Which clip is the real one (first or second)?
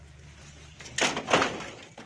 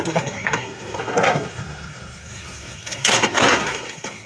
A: first